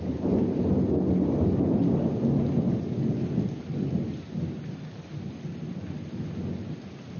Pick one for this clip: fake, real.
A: real